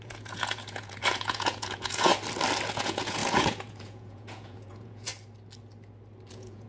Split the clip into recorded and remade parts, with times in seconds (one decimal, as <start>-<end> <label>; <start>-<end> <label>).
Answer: 0.0-2.1 remade; 2.1-2.7 recorded; 2.7-5.1 remade; 5.1-6.3 recorded; 6.3-6.7 remade